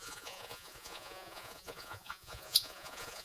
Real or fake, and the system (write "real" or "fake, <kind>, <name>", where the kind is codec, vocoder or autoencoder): fake, vocoder, Vocos